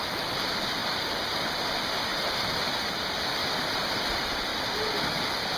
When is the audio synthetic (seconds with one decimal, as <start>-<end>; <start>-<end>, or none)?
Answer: 2.1-2.7; 3.4-4.1